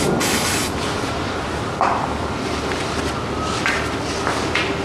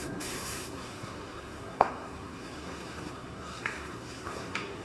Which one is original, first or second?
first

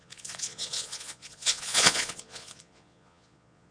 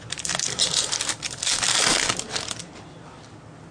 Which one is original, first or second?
second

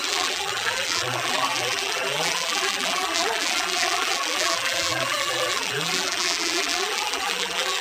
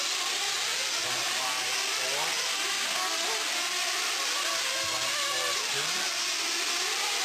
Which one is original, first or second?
second